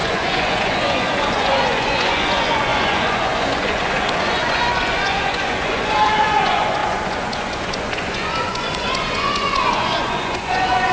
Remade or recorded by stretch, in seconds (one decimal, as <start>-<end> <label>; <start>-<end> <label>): 0.0-10.9 remade